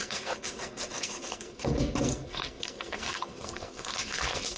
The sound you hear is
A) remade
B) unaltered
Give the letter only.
A